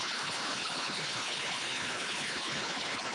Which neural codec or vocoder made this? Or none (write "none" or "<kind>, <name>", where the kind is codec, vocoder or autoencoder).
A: codec, HILCodec